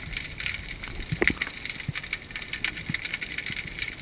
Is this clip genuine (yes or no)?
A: yes